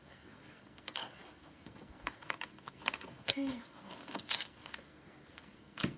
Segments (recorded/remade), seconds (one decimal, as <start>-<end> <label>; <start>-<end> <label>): 0.0-6.0 remade